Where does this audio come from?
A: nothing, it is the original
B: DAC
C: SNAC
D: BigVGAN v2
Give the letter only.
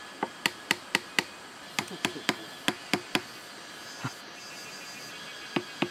A